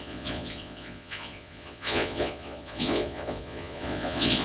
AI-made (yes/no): yes